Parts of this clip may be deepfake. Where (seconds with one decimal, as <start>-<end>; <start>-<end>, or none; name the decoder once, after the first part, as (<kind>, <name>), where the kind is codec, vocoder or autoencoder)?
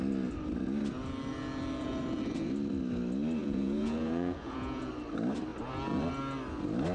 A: 3.4-4.9 (vocoder, Vocos)